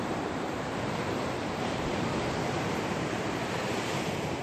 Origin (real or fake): fake